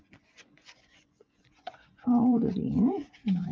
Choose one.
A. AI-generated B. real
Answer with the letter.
A